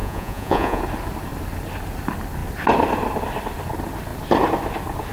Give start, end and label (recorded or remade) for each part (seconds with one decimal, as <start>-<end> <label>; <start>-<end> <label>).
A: 0.0-0.8 remade; 0.8-5.1 recorded